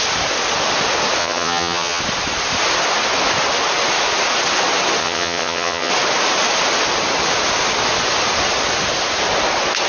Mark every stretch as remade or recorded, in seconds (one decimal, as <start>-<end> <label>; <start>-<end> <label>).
0.0-1.2 recorded; 1.2-2.0 remade; 2.0-5.0 recorded; 5.0-5.9 remade; 5.9-9.9 recorded